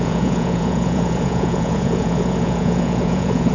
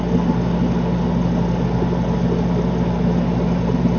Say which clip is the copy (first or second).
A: first